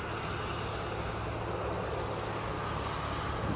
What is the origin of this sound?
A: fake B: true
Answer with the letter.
B